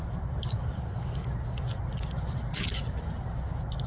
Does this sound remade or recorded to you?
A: recorded